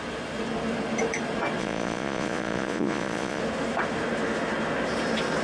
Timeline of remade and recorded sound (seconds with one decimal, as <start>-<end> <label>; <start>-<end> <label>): 0.0-1.6 recorded; 1.6-3.4 remade; 3.4-5.4 recorded